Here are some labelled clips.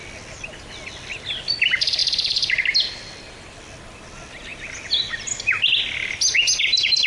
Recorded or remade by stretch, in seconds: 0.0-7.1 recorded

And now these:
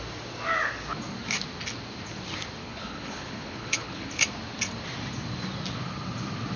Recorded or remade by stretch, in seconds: 0.0-2.6 recorded; 2.6-4.1 remade; 4.1-6.6 recorded